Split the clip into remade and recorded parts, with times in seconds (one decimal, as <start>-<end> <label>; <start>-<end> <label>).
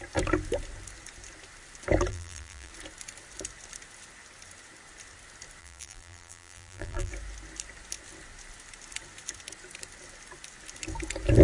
0.0-2.1 recorded; 2.1-2.7 remade; 2.7-5.6 recorded; 5.6-7.1 remade; 7.1-11.4 recorded